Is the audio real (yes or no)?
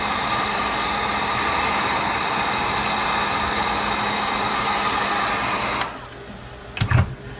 yes